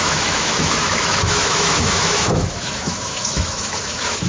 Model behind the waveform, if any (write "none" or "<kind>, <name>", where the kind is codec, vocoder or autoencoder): autoencoder, DAC-VAE